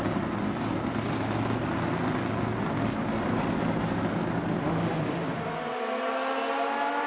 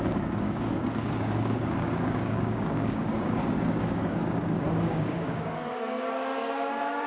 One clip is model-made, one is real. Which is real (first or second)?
first